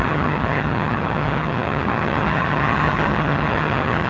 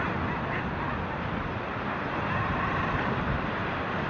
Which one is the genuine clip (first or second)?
second